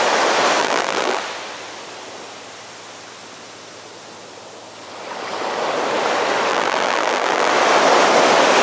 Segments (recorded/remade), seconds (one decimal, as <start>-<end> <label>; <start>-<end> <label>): 0.0-0.6 recorded; 0.6-1.2 remade; 1.2-6.5 recorded; 6.5-7.5 remade; 7.5-8.6 recorded